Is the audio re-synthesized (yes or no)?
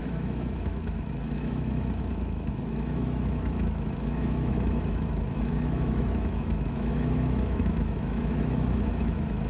yes